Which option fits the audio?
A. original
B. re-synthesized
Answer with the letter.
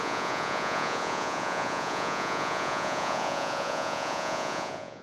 B